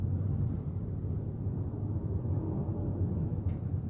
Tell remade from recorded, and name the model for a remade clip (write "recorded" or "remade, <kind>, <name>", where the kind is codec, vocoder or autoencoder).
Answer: recorded